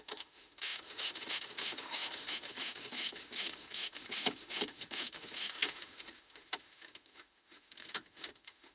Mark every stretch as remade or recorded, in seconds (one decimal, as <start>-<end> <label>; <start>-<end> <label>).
0.0-8.7 remade